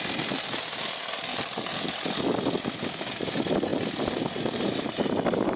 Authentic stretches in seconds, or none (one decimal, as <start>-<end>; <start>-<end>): 0.0-1.3; 2.2-5.6